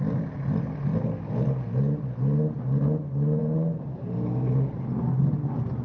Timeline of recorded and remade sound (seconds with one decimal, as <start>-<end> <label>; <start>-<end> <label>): 0.0-5.8 recorded